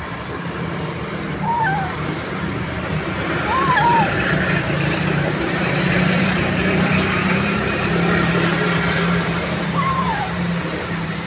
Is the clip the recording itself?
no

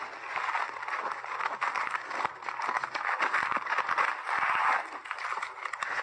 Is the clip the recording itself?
yes